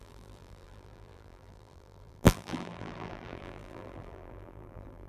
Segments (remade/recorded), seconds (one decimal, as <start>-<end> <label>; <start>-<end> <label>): 0.0-5.1 remade